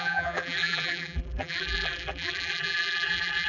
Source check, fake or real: fake